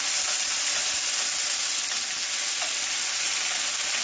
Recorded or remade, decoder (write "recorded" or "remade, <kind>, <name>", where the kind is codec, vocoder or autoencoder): recorded